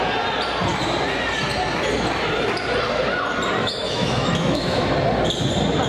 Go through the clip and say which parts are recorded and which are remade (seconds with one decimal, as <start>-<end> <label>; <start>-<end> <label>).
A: 0.0-3.6 recorded; 3.6-4.9 remade; 4.9-5.9 recorded

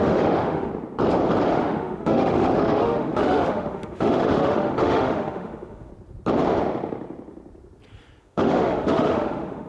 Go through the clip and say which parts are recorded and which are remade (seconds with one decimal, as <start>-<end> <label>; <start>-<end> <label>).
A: 0.0-0.7 remade; 0.7-1.5 recorded; 1.5-5.9 remade; 5.9-8.2 recorded; 8.2-9.7 remade

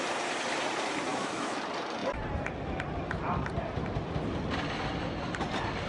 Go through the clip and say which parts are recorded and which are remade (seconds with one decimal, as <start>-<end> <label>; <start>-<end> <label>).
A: 0.0-1.1 recorded; 1.1-1.6 remade; 1.6-5.9 recorded

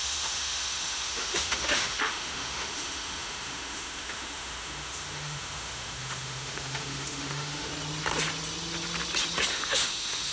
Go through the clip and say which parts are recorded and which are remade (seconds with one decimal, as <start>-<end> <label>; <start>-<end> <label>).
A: 0.0-7.7 remade; 7.7-9.5 recorded; 9.5-10.3 remade

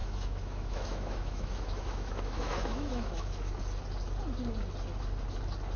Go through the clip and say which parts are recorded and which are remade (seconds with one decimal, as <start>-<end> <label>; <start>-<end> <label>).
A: 0.0-3.5 remade; 3.5-5.8 recorded

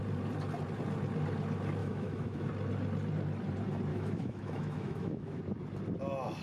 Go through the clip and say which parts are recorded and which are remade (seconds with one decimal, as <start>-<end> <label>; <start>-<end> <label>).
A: 0.0-1.8 recorded; 1.8-2.5 remade; 2.5-3.9 recorded; 3.9-5.4 remade; 5.4-6.4 recorded

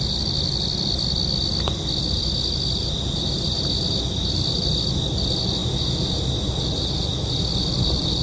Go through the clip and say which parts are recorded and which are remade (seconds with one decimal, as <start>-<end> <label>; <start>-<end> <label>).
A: 0.0-8.2 recorded